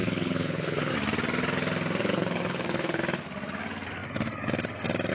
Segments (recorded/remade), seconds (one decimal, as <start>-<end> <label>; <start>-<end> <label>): 0.0-0.9 remade; 0.9-2.0 recorded; 2.0-3.0 remade; 3.0-5.1 recorded